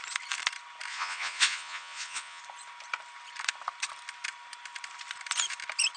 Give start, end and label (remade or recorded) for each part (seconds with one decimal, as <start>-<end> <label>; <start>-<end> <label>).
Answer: 0.0-0.9 recorded; 0.9-2.4 remade; 2.4-6.0 recorded